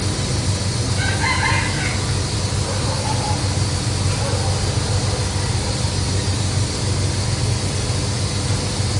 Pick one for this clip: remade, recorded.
recorded